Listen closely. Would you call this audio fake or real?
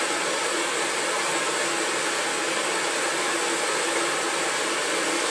real